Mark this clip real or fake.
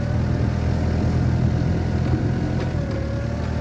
real